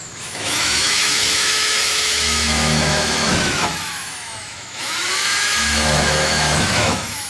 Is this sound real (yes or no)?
no